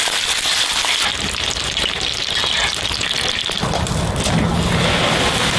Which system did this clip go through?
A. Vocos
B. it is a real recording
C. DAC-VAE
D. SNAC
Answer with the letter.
B